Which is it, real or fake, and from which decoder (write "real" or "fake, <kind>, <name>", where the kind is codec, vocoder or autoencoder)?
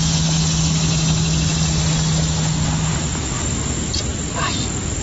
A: real